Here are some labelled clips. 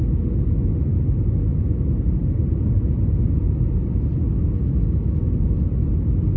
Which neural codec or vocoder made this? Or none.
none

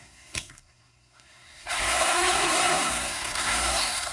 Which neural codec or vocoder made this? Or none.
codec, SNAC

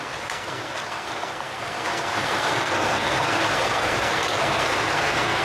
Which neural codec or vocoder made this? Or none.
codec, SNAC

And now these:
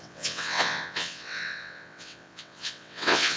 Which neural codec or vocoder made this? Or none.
vocoder, WaveNeXt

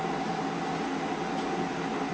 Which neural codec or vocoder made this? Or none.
none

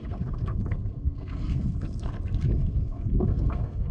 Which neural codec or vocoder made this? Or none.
codec, SNAC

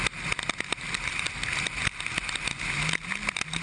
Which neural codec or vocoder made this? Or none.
none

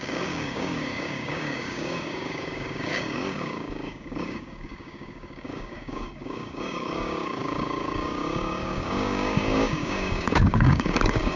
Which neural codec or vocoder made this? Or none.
codec, DAC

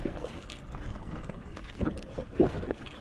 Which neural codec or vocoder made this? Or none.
codec, SNAC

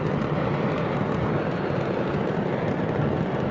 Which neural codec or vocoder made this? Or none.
none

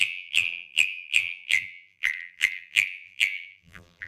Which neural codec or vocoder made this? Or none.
vocoder, BigVGAN v2